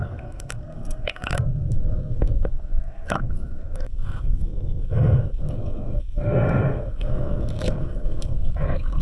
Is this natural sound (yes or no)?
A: no